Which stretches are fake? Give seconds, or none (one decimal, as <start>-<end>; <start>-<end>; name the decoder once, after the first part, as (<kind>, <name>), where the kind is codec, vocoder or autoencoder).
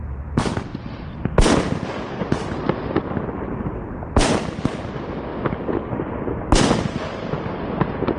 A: none